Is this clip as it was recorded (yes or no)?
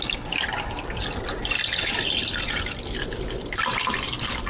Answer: yes